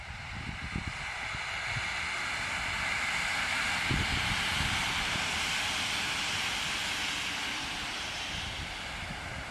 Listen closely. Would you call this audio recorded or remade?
recorded